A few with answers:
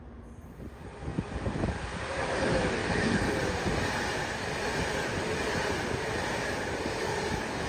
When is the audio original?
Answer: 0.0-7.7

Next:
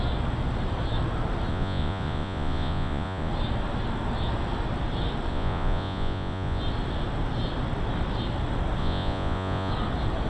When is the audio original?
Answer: 0.0-1.5; 3.3-5.3; 6.6-8.8; 9.7-10.3